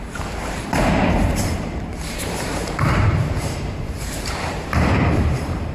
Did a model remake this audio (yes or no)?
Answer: yes